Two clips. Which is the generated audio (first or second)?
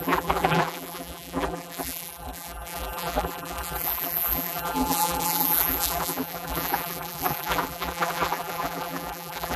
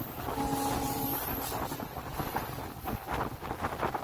first